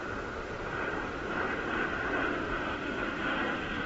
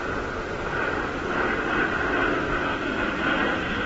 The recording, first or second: second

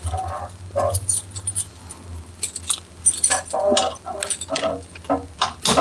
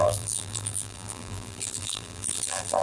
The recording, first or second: first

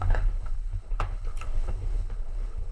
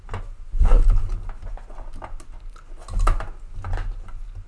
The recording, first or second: second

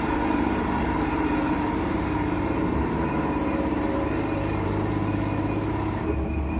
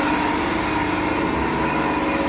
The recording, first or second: second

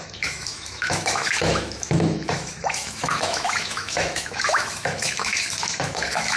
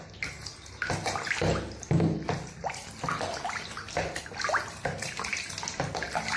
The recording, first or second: second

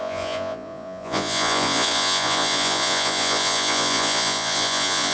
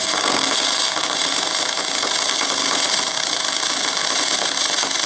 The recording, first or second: second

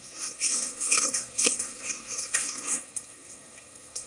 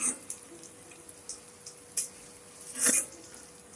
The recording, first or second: second